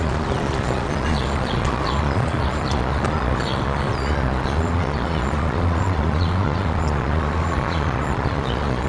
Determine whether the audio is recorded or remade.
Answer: remade